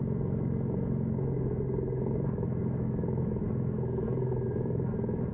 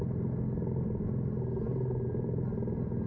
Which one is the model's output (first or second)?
first